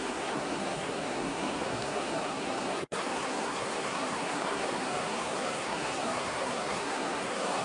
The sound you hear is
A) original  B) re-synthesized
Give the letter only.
B